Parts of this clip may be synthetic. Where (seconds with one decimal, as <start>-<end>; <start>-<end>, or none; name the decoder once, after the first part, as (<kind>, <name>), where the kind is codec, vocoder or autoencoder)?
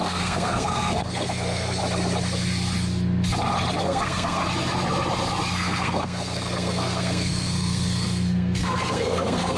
0.0-1.8 (codec, SNAC); 3.8-4.4; 5.5-9.6